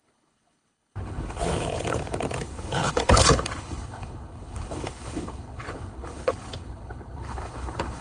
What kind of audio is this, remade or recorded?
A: remade